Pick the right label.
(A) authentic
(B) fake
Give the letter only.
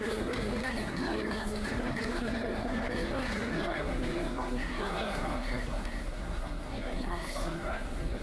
B